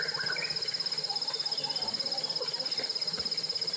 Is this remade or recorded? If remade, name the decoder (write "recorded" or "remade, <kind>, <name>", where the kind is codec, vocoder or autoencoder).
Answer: recorded